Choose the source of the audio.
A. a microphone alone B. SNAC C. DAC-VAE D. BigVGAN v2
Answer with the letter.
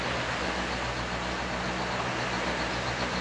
A